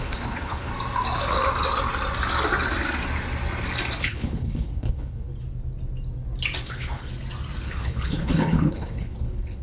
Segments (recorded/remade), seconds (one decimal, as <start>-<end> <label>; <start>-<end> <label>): 0.0-0.7 remade; 0.7-4.0 recorded; 4.0-5.3 remade; 5.3-6.6 recorded; 6.6-7.1 remade; 7.1-7.6 recorded; 7.6-9.6 remade